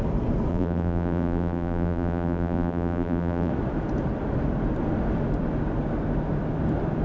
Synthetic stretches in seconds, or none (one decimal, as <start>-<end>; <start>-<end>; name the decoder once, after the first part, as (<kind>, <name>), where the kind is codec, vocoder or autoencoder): 0.5-3.5 (vocoder, BigVGAN v2)